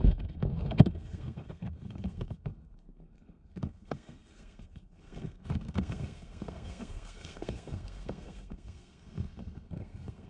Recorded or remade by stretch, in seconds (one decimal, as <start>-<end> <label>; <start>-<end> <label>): 0.0-10.3 remade